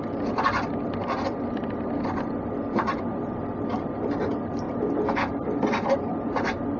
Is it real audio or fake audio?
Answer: real